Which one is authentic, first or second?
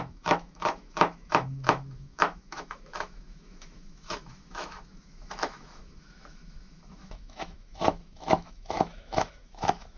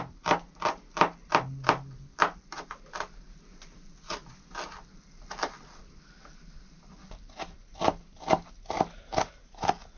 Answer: second